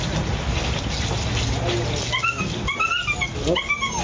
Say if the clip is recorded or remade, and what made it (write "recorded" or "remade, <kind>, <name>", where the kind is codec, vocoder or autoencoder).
recorded